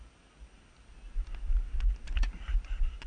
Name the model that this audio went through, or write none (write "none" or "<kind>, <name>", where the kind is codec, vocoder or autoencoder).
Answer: none